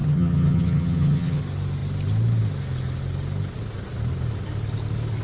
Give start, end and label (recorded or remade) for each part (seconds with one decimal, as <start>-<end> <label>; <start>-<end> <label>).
0.0-1.4 remade; 1.4-5.2 recorded